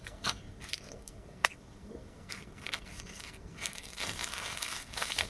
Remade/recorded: remade